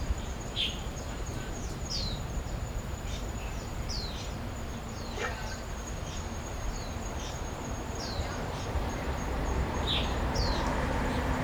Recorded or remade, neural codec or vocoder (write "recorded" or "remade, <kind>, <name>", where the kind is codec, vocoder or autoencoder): remade, vocoder, BigVGAN v2